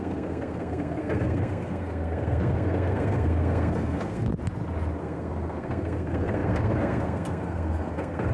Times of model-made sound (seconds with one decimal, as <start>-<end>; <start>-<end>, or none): 0.0-4.3; 5.0-8.3